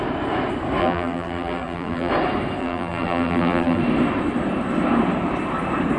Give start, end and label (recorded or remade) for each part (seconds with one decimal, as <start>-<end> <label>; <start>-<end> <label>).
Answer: 0.0-0.8 recorded; 0.8-2.1 remade; 2.1-2.6 recorded; 2.6-3.8 remade; 3.8-6.0 recorded